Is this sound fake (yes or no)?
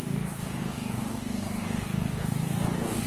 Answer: yes